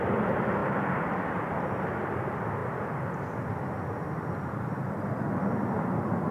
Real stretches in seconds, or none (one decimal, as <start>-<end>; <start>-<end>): 0.0-0.6; 1.4-2.6; 4.8-6.3